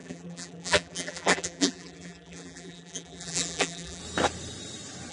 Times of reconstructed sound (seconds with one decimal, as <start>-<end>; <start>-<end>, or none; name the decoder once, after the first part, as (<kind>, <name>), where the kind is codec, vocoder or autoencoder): 0.0-4.0 (vocoder, BigVGAN v2)